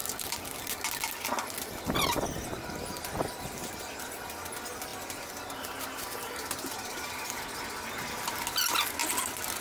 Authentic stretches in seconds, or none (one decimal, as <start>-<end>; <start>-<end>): 0.0-9.6